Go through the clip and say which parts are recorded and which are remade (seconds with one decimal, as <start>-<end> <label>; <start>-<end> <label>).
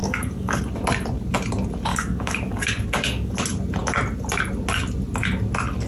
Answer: 0.0-0.6 remade; 0.6-1.9 recorded; 1.9-3.3 remade; 3.3-5.9 recorded